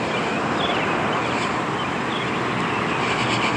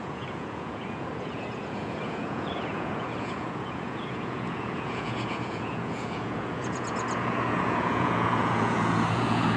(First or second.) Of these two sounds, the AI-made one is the second